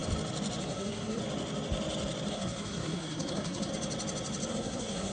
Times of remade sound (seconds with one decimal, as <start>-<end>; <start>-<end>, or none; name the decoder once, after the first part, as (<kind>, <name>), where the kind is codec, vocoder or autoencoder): 0.6-1.2 (codec, SNAC); 2.3-3.7; 4.5-5.1